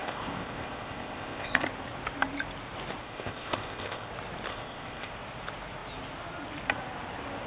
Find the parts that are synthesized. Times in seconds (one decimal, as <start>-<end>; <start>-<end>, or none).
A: 0.0-1.6; 3.0-4.1; 4.5-5.1